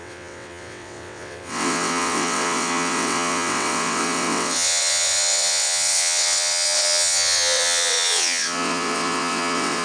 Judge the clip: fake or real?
fake